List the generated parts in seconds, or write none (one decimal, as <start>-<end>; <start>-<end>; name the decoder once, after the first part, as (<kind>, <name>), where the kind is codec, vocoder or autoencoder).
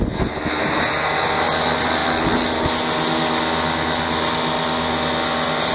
none